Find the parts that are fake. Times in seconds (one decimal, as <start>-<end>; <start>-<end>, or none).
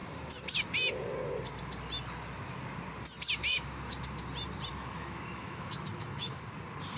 3.5-4.2; 4.7-6.4